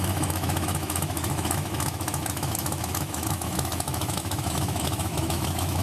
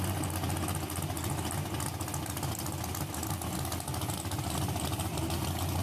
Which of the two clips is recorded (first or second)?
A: second